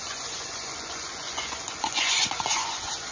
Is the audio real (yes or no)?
no